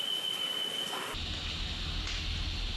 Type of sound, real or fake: real